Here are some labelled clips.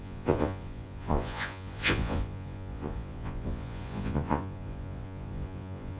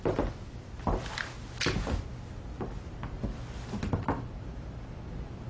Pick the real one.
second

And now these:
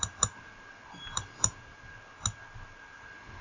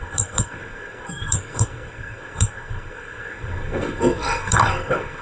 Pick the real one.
first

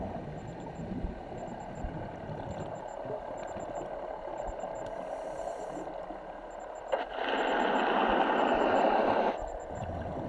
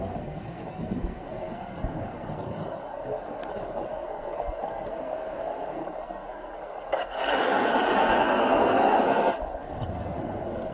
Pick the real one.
first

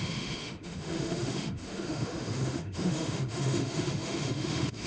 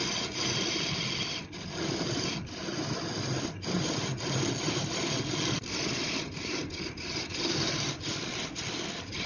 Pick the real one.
second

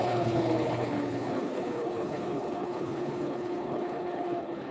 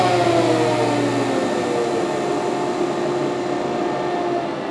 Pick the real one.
second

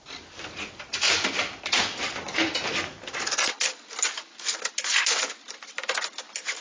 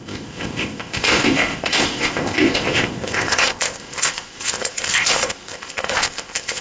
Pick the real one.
first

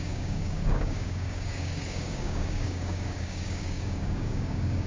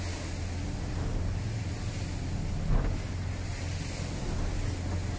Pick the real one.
second